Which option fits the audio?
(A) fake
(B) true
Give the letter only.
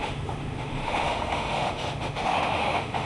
A